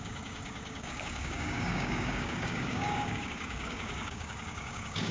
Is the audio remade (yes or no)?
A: yes